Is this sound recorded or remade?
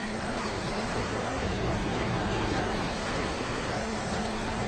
remade